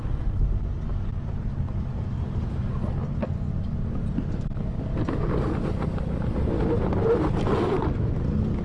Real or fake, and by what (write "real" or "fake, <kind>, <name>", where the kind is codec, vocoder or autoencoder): real